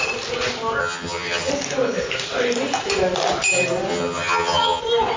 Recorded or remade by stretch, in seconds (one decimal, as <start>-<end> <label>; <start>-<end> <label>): 0.0-0.8 recorded; 0.8-1.5 remade; 1.5-3.9 recorded; 3.9-4.8 remade; 4.8-5.2 recorded